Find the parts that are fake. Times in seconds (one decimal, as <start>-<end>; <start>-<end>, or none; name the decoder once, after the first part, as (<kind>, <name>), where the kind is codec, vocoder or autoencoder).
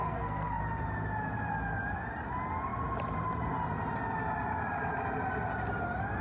0.0-0.6 (codec, SNAC)